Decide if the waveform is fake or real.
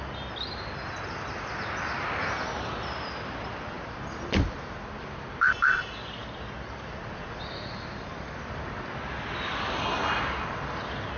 real